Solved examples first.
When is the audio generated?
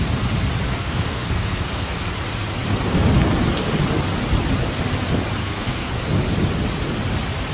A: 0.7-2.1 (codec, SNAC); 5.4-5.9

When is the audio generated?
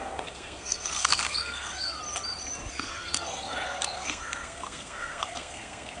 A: 0.0-2.0 (codec, SNAC); 2.7-6.0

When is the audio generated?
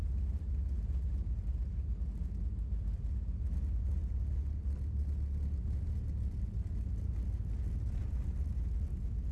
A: none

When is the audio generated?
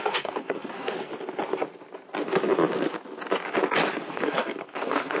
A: 0.0-1.1 (codec, SNAC); 4.1-5.2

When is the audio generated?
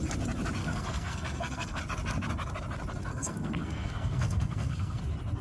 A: 0.6-1.8 (codec, SNAC); 3.1-5.0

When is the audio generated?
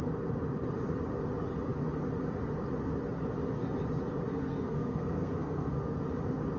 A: 4.3-6.0 (codec, SNAC)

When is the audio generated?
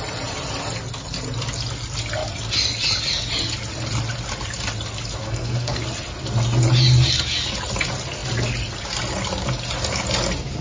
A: 5.2-5.8 (codec, SNAC)